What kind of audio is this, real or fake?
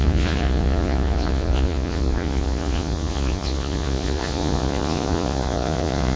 fake